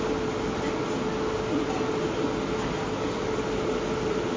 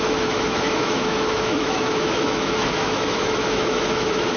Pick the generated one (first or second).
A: second